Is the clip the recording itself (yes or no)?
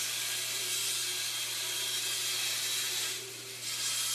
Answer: yes